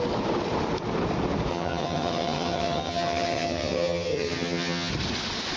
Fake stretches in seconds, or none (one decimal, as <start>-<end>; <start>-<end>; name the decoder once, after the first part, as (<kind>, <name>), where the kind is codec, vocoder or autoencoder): 1.5-4.9 (vocoder, HiFi-GAN)